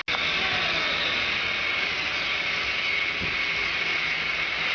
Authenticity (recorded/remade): recorded